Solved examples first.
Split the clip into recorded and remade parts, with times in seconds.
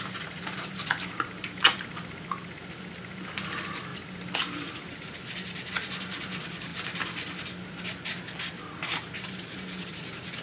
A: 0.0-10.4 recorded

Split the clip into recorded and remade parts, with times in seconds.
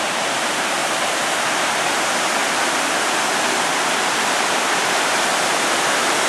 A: 0.0-0.8 remade; 0.8-1.6 recorded; 1.6-2.4 remade; 2.4-4.9 recorded; 4.9-6.3 remade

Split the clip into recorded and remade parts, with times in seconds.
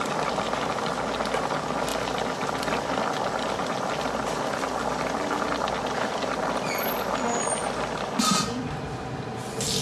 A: 0.0-1.9 recorded; 1.9-6.8 remade; 6.8-7.6 recorded; 7.6-8.2 remade; 8.2-9.8 recorded